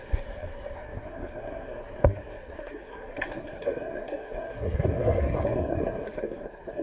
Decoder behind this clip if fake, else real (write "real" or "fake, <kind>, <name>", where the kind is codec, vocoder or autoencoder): fake, codec, SNAC